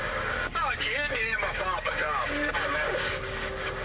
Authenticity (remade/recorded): remade